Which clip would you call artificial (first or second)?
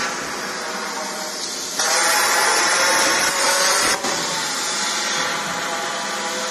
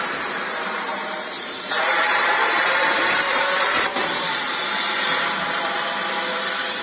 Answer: second